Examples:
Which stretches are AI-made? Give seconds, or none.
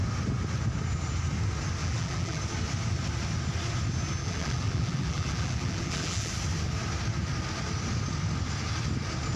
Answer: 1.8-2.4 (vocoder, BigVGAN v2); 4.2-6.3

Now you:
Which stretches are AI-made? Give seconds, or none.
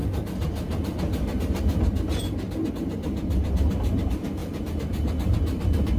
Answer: 2.7-6.0 (vocoder, BigVGAN v2)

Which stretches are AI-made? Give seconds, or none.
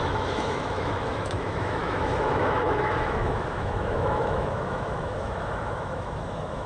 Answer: 0.0-6.7 (autoencoder, DAC-VAE)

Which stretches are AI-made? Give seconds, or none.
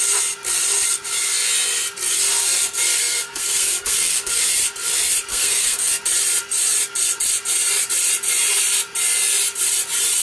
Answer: 2.4-4.3 (codec, SNAC); 5.3-6.0